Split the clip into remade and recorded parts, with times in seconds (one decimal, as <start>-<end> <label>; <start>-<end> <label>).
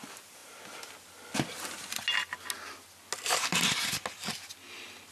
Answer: 0.0-5.1 recorded